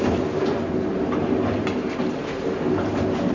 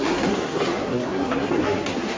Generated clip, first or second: second